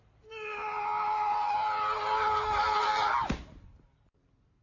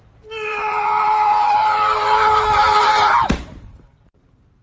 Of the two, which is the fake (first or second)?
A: second